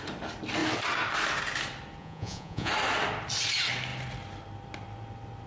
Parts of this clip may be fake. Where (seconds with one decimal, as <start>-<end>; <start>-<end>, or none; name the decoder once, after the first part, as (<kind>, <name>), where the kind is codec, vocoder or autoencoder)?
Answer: 2.0-2.7 (vocoder, Vocos)